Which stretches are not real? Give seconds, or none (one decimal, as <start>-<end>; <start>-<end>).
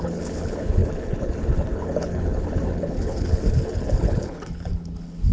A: 0.0-5.3